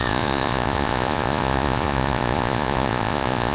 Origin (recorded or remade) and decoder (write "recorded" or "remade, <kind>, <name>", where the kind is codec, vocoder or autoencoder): remade, vocoder, Vocos